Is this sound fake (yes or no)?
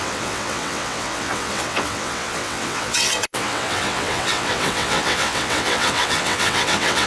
yes